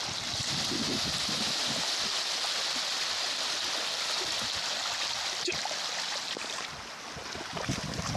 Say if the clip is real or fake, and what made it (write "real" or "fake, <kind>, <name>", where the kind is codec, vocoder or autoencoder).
real